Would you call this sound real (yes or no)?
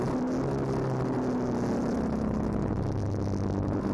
yes